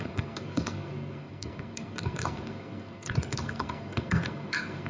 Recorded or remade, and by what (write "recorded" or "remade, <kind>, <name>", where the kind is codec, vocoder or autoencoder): remade, codec, SNAC